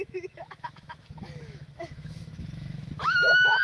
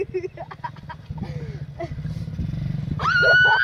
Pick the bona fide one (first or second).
second